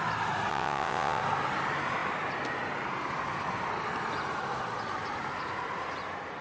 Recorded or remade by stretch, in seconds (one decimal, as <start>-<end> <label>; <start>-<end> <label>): 0.0-0.5 recorded; 0.5-1.2 remade; 1.2-6.4 recorded